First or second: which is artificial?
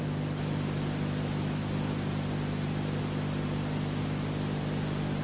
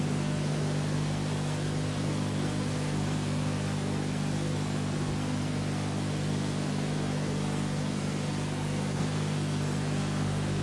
second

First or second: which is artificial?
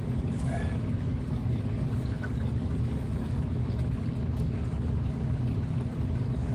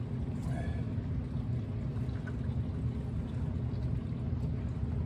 first